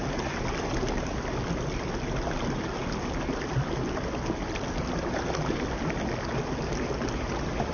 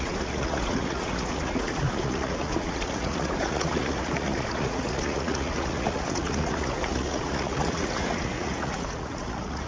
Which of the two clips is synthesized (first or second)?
second